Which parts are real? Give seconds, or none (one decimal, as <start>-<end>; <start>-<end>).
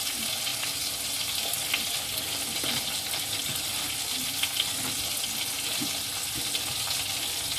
0.0-7.6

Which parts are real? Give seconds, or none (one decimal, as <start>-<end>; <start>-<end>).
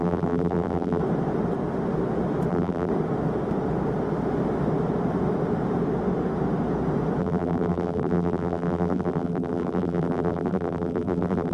1.0-2.5; 2.9-7.2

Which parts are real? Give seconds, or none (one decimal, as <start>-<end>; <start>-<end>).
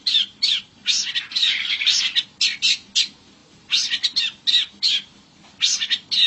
0.0-6.3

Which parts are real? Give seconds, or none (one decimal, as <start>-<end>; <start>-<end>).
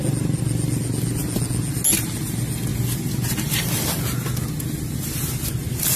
0.0-6.0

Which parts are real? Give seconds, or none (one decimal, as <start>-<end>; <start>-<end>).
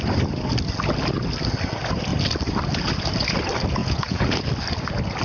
0.0-3.8; 4.4-5.2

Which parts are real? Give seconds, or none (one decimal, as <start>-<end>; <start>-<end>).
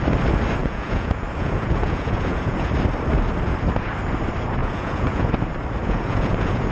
0.0-0.6; 2.7-4.6; 5.3-5.8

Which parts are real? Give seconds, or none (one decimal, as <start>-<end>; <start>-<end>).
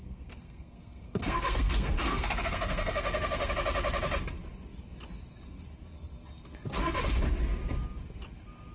3.5-8.7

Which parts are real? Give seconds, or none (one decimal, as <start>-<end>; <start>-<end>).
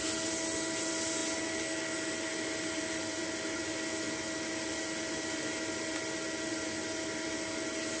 0.0-8.0